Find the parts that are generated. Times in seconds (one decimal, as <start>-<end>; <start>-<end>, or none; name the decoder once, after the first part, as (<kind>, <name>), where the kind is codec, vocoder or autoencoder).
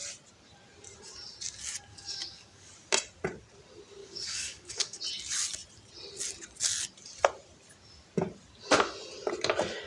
1.9-2.7 (codec, DAC); 4.0-5.0